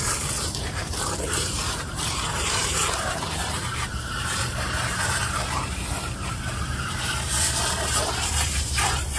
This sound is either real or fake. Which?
fake